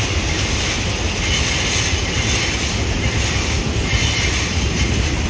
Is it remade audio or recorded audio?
recorded